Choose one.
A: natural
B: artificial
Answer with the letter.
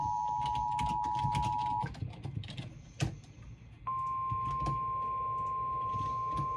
A